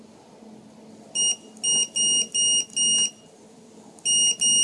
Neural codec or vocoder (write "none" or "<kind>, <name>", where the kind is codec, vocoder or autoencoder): none